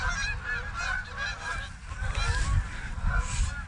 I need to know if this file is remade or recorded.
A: recorded